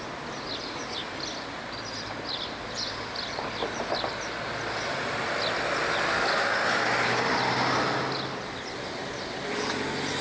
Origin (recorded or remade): recorded